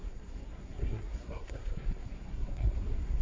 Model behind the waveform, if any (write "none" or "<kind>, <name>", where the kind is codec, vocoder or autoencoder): codec, SNAC